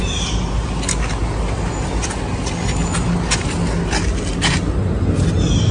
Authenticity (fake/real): real